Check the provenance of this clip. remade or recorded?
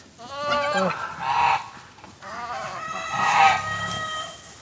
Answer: recorded